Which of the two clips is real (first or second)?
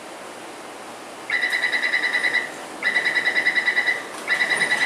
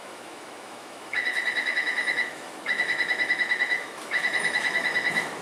first